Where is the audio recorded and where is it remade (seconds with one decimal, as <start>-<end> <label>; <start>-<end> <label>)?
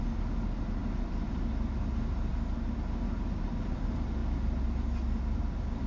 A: 0.0-5.9 recorded